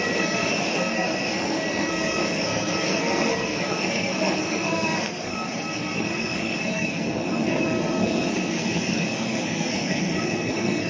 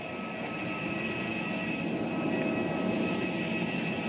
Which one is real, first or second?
second